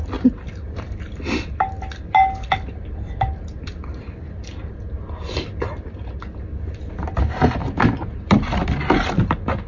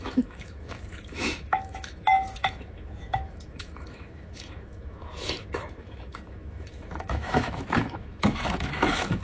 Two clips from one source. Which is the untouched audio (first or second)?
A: first